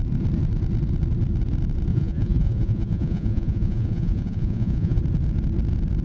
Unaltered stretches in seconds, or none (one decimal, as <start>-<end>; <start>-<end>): 0.0-1.9; 5.0-6.0